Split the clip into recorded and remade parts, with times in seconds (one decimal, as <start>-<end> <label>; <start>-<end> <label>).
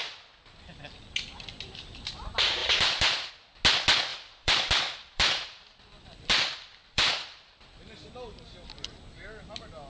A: 0.0-2.6 recorded; 2.6-3.3 remade; 3.3-4.1 recorded; 4.1-8.1 remade; 8.1-9.9 recorded